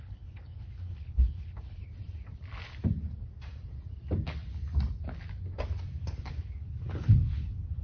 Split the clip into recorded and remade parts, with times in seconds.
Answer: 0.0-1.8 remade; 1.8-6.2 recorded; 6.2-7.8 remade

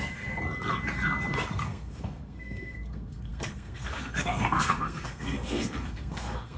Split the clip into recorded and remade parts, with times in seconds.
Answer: 0.0-0.4 remade; 0.4-1.5 recorded; 1.5-6.6 remade

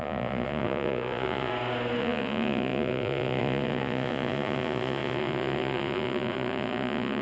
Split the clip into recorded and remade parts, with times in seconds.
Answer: 0.0-1.5 remade; 1.5-2.0 recorded; 2.0-7.2 remade